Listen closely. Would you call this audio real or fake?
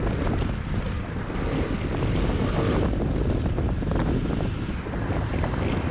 real